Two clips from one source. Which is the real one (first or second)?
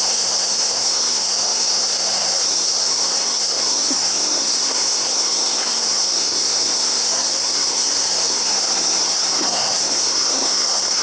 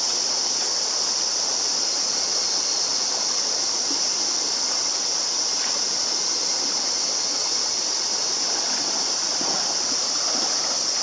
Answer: second